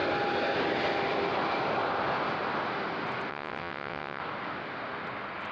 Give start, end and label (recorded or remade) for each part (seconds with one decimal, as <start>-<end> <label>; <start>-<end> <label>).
0.0-3.3 recorded; 3.3-4.2 remade; 4.2-5.5 recorded